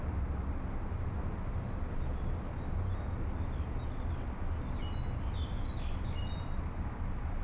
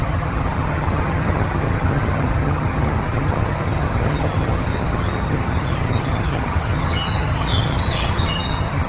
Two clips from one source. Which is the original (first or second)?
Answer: first